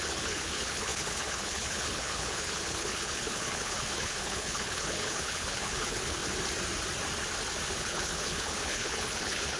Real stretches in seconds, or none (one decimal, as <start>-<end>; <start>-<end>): 6.2-7.7